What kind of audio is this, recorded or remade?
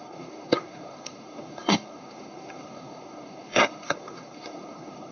remade